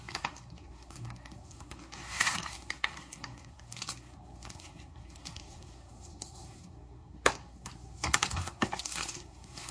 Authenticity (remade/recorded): remade